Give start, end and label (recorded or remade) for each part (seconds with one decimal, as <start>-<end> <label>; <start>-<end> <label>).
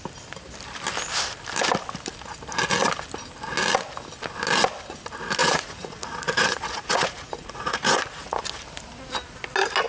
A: 0.0-5.4 recorded; 5.4-8.4 remade; 8.4-9.9 recorded